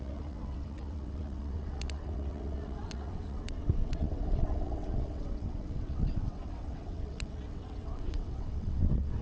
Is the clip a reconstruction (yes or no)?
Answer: yes